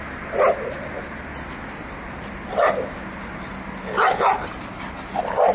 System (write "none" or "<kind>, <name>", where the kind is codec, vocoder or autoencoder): none